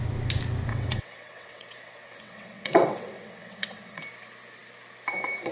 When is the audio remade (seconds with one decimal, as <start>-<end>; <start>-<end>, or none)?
0.7-4.0